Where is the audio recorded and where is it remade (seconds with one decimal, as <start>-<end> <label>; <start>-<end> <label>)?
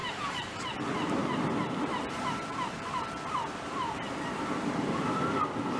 0.0-5.8 remade